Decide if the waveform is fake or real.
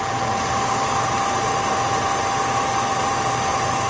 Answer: fake